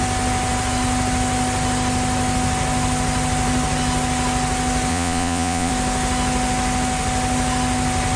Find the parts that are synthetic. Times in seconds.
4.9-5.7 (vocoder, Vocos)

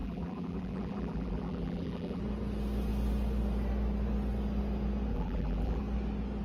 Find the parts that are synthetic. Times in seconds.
0.0-2.2 (vocoder, BigVGAN v2); 5.1-5.8

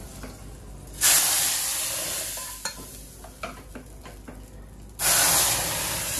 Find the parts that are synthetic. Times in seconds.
none

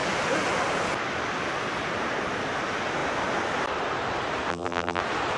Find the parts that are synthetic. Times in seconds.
4.5-5.0 (vocoder, BigVGAN v2)

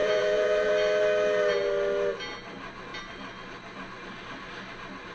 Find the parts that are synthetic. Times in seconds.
0.0-0.7 (vocoder, Vocos)

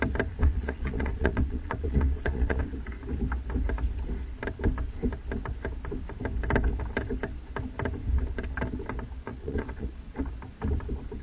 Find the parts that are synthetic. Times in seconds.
0.4-2.6 (vocoder, Vocos); 9.3-10.3

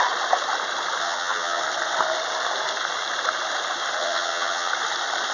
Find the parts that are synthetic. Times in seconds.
1.0-1.6 (vocoder, HiFi-GAN); 4.0-4.7